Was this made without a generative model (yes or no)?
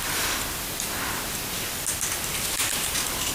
yes